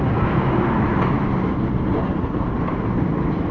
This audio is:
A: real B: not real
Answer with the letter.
A